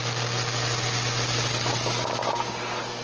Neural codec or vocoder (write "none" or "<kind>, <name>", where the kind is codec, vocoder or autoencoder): none